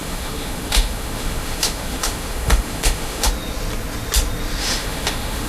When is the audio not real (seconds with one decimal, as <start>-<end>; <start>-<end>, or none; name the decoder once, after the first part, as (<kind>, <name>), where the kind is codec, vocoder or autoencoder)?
0.0-3.3 (autoencoder, DAC-VAE); 4.6-5.5